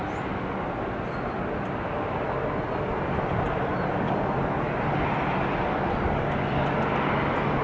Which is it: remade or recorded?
recorded